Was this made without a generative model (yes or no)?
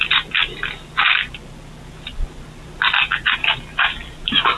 yes